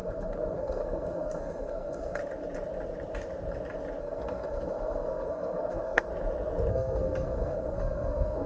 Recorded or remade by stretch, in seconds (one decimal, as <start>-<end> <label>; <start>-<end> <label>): 0.0-2.2 remade; 2.2-4.0 recorded; 4.0-6.1 remade; 6.1-6.7 recorded; 6.7-8.5 remade